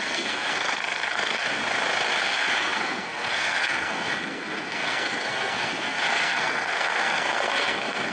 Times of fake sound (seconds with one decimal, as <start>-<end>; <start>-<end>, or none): 0.0-1.6; 2.2-8.1